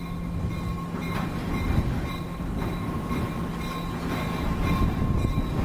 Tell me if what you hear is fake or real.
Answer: real